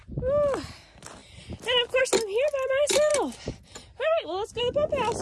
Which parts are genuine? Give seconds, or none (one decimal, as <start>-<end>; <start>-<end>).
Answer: 0.0-5.2